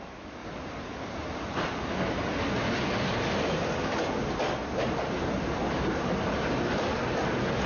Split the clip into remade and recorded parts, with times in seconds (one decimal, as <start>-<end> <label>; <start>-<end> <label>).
0.0-7.7 recorded